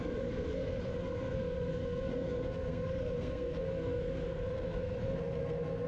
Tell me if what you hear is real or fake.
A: fake